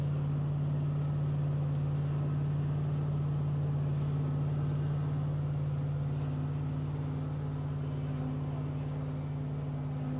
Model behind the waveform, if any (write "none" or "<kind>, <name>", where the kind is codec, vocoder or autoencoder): none